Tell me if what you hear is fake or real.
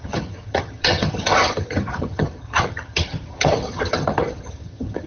fake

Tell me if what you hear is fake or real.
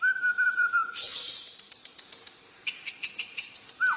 fake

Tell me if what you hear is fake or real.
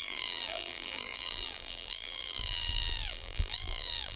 fake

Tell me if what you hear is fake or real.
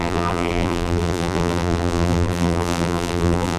fake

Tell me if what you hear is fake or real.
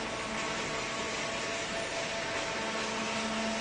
real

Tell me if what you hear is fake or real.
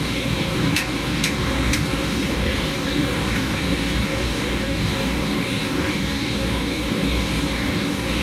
fake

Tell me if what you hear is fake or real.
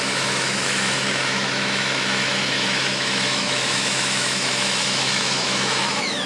fake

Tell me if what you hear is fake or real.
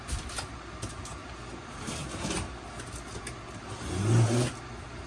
real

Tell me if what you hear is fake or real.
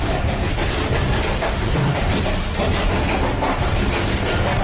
real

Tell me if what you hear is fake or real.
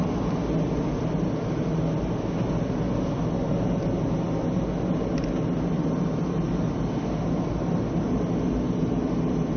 real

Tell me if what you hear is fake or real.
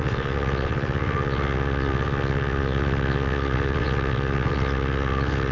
fake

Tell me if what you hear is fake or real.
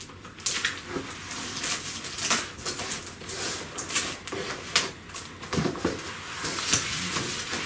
real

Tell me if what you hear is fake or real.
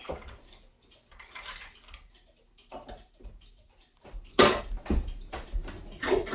real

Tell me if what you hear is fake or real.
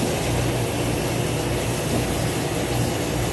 real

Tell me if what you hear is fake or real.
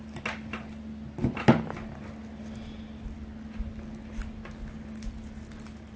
real